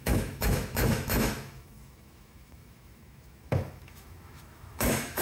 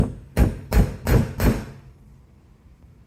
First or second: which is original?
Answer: second